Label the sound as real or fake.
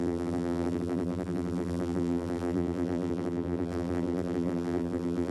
fake